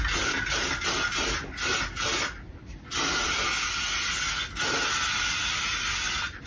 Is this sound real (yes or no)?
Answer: yes